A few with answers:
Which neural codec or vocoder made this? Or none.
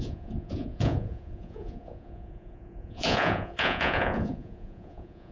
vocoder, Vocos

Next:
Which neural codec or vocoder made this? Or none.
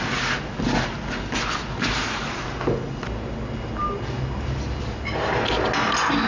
none